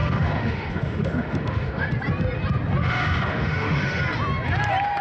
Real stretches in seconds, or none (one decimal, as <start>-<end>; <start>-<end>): 1.9-2.8; 4.0-5.0